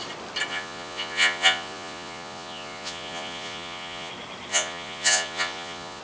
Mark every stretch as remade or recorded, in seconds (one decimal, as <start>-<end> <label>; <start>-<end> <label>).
0.0-0.5 recorded; 0.5-4.1 remade; 4.1-4.5 recorded; 4.5-6.0 remade

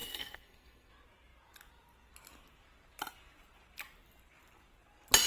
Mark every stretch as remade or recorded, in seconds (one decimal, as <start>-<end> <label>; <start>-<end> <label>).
0.0-0.9 remade; 0.9-5.3 recorded

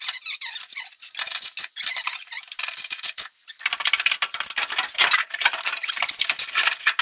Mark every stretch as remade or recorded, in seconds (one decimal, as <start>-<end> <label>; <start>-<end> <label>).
0.0-1.8 recorded; 1.8-6.0 remade; 6.0-7.0 recorded

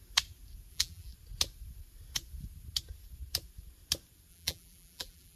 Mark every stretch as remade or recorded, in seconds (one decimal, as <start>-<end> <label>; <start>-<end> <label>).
0.0-0.7 recorded; 0.7-1.1 remade; 1.1-4.3 recorded; 4.3-5.4 remade

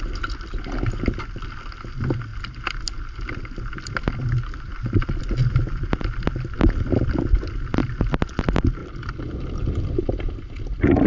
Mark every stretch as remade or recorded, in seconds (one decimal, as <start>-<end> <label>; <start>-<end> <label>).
0.0-11.1 recorded